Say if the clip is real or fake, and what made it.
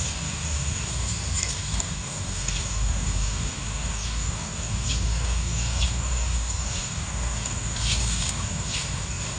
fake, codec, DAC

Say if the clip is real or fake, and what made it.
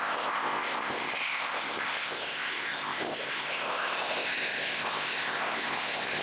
fake, codec, ZipCodec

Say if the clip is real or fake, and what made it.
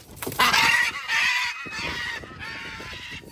real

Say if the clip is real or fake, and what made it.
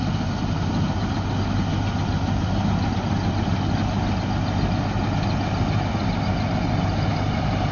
real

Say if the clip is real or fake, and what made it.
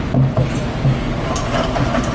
real